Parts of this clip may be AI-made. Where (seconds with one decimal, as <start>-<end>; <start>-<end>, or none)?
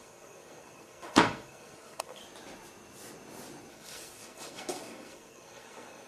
0.0-2.2; 3.7-6.1